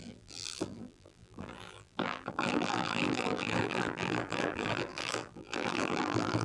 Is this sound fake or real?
fake